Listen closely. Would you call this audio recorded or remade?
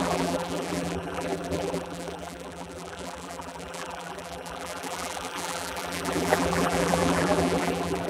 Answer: remade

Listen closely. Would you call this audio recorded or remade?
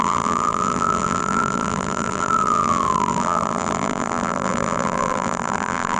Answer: remade